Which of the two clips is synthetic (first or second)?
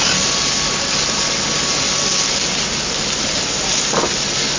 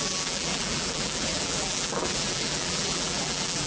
second